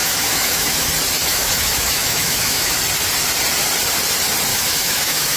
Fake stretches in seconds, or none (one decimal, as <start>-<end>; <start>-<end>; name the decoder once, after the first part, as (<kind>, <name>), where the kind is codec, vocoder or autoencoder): 0.0-0.9 (autoencoder, DAC-VAE); 1.3-2.8; 4.5-5.4